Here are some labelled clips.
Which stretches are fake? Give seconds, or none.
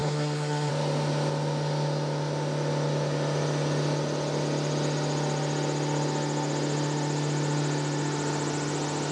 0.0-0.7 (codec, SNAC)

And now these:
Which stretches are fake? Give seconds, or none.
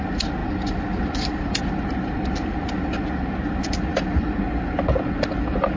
0.4-1.7 (vocoder, BigVGAN v2); 3.9-4.4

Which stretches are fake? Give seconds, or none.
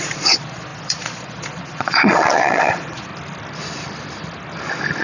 0.0-3.1 (vocoder, Vocos)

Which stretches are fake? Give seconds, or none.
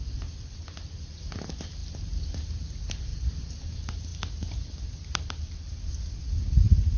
none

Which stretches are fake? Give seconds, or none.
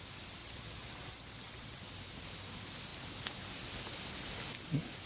0.4-1.8 (vocoder, WaveNeXt)